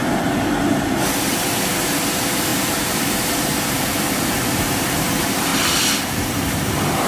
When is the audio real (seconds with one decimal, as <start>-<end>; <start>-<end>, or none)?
0.0-0.6; 5.5-6.1